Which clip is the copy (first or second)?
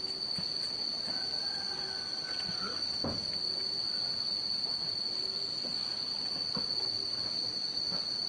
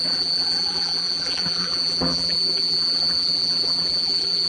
second